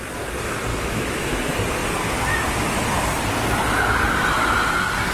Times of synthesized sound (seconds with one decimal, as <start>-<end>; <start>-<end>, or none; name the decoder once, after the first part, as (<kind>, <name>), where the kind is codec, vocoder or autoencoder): 0.7-1.4 (autoencoder, DAC-VAE)